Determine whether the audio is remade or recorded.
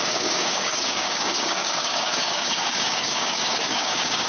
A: remade